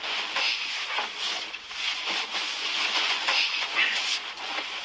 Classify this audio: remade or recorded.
remade